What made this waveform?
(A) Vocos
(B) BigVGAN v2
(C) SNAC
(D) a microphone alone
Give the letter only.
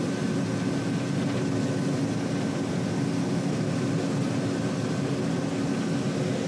D